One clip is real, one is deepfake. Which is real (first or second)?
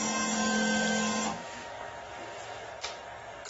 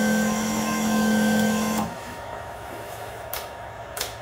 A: first